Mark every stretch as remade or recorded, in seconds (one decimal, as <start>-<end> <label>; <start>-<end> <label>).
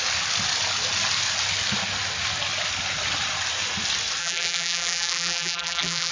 0.0-4.2 recorded; 4.2-6.1 remade